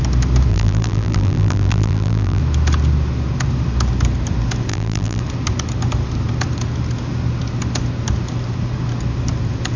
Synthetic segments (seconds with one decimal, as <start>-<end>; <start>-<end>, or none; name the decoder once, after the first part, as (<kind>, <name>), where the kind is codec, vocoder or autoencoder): 0.5-2.4 (vocoder, BigVGAN v2); 4.7-5.2